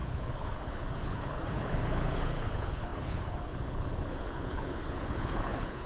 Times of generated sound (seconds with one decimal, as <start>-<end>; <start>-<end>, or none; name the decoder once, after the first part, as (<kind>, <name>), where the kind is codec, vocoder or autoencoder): 0.0-5.9 (codec, HILCodec)